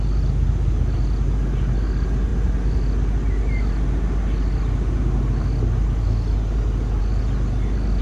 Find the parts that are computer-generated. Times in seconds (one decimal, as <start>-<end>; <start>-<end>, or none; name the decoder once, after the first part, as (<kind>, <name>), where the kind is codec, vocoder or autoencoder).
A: none